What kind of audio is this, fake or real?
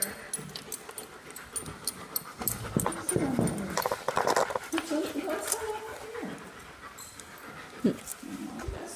real